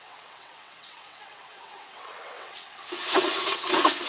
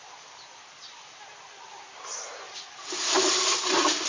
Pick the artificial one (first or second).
first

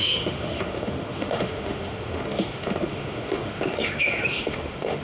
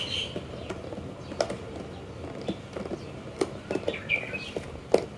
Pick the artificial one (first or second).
first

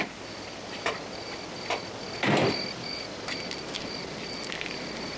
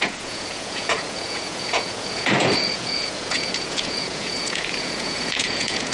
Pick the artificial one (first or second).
second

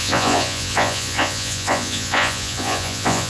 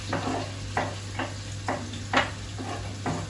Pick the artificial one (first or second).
first